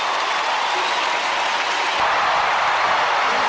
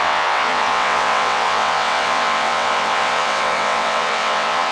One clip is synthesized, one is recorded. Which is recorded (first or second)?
first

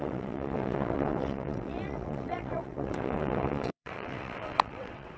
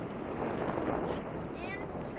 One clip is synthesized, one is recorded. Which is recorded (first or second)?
second